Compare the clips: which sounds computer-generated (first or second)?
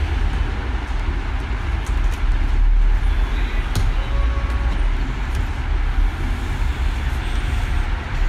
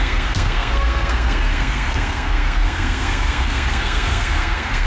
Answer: second